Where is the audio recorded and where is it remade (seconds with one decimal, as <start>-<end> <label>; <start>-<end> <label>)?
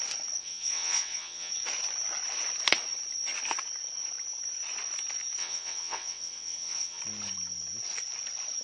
0.0-0.4 recorded; 0.4-1.5 remade; 1.5-5.4 recorded; 5.4-7.0 remade; 7.0-8.6 recorded